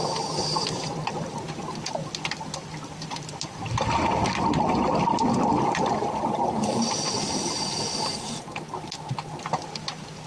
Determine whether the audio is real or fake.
real